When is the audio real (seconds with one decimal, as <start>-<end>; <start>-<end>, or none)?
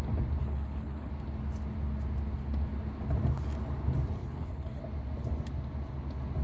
0.0-0.4; 1.1-4.2; 4.8-6.4